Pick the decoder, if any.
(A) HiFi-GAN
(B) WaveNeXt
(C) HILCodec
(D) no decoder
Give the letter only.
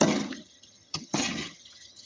A